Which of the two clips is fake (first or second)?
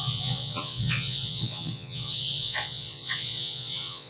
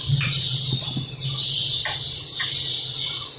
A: first